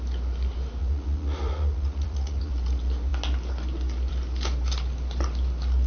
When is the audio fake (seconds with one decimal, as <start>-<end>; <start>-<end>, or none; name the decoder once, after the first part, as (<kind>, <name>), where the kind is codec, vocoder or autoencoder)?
0.8-2.5 (vocoder, Vocos)